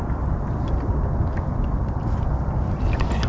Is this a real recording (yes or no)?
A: yes